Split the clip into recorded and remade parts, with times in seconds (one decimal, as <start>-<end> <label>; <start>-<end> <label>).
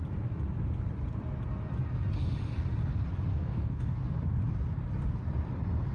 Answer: 0.0-3.3 recorded; 3.3-4.0 remade; 4.0-5.9 recorded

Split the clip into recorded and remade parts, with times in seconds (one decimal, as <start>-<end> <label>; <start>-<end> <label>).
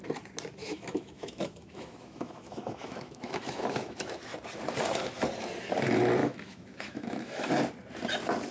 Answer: 0.0-0.6 recorded; 0.6-4.2 remade; 4.2-6.2 recorded; 6.2-7.5 remade; 7.5-8.5 recorded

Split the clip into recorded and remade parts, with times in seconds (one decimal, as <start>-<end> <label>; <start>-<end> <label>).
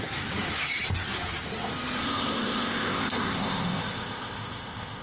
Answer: 0.0-2.0 recorded; 2.0-5.0 remade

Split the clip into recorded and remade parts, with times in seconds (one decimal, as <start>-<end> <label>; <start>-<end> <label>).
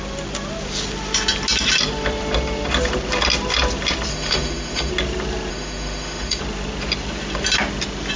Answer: 0.0-4.1 recorded; 4.1-4.9 remade; 4.9-5.5 recorded; 5.5-6.4 remade; 6.4-8.2 recorded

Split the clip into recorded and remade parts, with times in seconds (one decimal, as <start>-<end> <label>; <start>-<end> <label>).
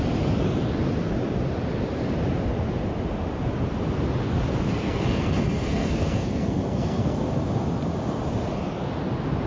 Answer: 0.0-4.8 recorded; 4.8-7.3 remade; 7.3-9.5 recorded